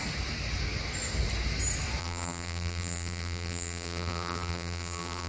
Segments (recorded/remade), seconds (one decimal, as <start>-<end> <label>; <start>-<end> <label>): 0.0-2.0 recorded; 2.0-5.3 remade

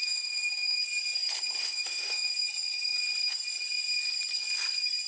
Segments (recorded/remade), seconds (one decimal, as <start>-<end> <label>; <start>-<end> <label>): 0.0-0.8 remade; 0.8-1.6 recorded; 1.6-2.3 remade; 2.3-5.1 recorded